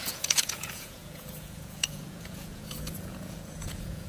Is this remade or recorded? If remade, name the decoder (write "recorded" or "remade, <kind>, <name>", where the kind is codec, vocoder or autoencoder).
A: remade, vocoder, Vocos